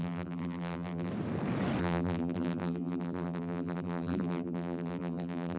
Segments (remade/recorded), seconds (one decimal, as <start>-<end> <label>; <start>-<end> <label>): 0.0-1.1 remade; 1.1-1.8 recorded; 1.8-5.6 remade